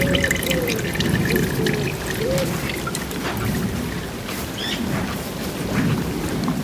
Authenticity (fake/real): real